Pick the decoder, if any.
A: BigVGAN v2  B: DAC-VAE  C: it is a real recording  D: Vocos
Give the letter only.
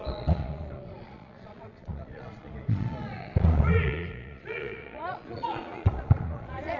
D